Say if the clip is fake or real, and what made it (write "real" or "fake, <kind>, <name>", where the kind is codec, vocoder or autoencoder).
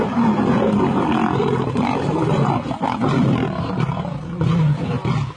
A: real